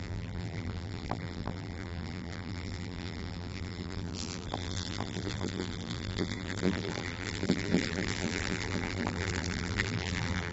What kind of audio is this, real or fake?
fake